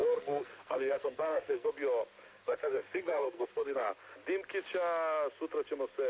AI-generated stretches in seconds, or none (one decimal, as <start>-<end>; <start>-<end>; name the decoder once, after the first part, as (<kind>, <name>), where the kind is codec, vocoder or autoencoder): 0.0-1.7 (codec, SNAC); 2.3-3.9